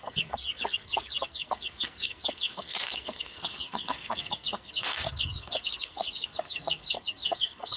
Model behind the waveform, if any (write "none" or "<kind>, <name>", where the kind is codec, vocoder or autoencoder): codec, SNAC